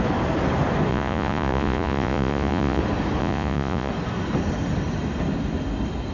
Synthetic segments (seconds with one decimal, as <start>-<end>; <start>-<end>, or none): 0.9-2.8; 3.2-3.9

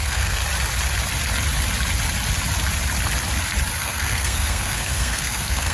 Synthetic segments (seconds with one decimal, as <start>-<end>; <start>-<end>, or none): 0.0-0.4; 3.8-5.7